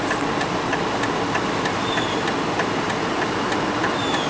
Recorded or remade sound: recorded